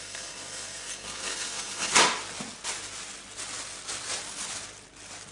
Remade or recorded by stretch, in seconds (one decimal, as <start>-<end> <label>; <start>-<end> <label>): 0.0-1.9 remade; 1.9-5.3 recorded